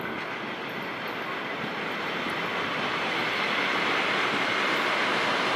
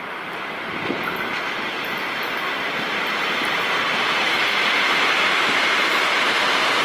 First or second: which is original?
first